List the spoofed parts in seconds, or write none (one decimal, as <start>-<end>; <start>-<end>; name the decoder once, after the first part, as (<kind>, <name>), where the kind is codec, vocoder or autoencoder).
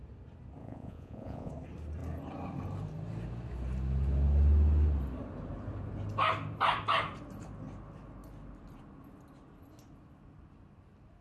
0.6-1.5 (vocoder, Vocos)